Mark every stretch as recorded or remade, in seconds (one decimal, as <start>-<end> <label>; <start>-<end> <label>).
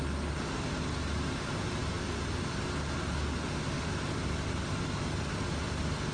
0.0-6.1 recorded